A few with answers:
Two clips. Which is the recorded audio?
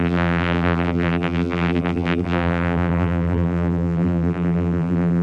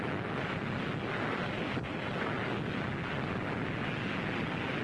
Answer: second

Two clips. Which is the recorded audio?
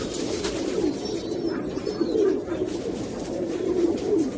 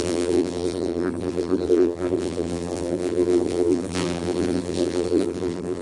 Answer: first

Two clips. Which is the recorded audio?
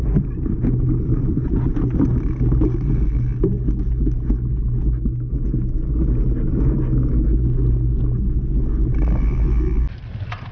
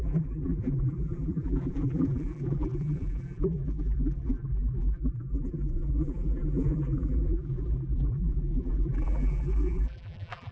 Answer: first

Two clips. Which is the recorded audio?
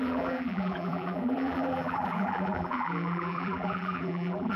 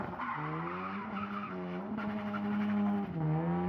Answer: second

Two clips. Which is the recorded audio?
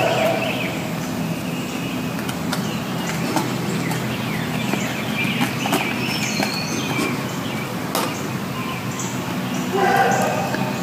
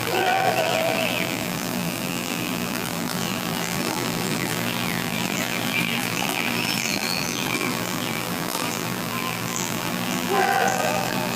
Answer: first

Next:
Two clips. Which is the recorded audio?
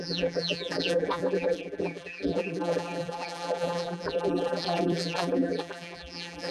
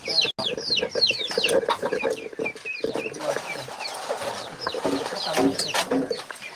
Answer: second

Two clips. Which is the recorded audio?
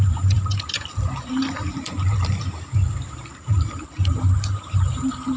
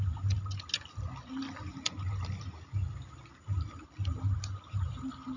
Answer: second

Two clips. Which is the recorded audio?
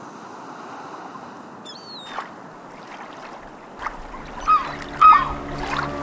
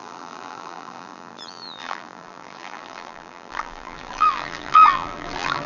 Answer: first